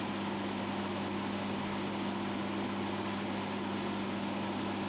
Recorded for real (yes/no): yes